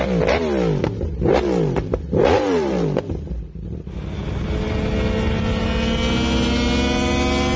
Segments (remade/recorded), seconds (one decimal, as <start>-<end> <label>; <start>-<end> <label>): 0.0-0.8 recorded; 0.8-3.9 remade; 3.9-7.6 recorded